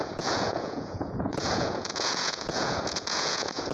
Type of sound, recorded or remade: remade